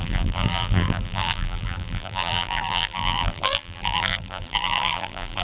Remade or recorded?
remade